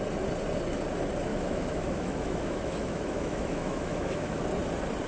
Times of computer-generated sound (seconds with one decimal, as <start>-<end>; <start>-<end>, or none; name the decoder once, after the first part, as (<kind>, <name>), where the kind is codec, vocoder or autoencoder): 1.3-4.4 (autoencoder, DAC-VAE)